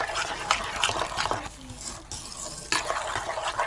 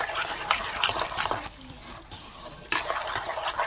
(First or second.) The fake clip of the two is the second